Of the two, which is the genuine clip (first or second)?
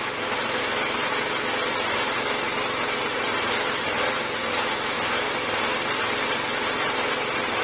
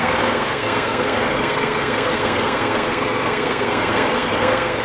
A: first